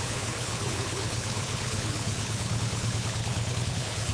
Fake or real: fake